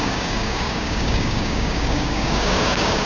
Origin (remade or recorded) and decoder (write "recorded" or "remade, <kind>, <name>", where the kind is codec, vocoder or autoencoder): remade, codec, DAC